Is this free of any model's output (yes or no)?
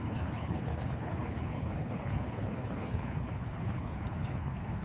no